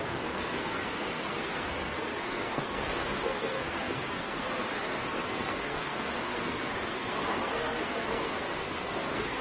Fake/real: fake